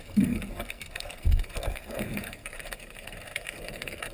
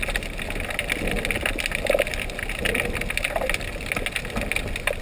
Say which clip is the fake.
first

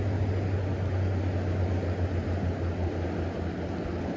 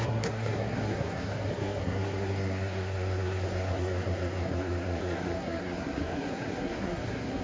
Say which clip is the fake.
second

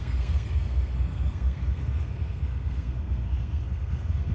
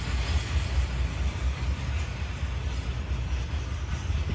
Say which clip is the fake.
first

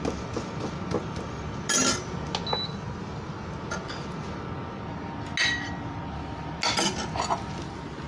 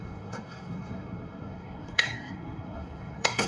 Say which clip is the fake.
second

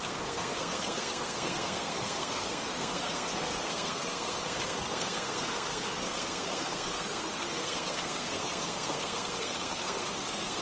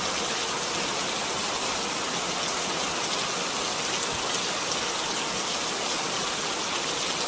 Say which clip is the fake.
first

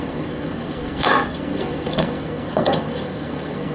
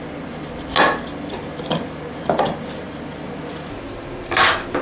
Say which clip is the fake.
first